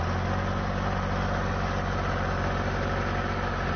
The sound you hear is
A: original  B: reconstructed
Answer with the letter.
A